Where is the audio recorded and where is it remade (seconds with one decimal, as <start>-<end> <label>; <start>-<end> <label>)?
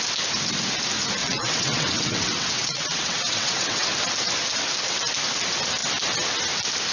0.0-1.2 recorded; 1.2-3.9 remade; 3.9-6.9 recorded